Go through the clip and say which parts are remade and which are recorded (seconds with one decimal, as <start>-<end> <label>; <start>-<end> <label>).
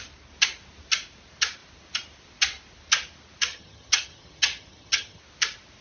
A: 0.0-3.5 recorded; 3.5-5.2 remade; 5.2-5.8 recorded